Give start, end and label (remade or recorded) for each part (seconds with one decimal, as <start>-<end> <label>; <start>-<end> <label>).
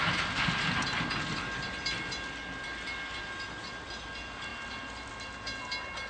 0.0-6.1 recorded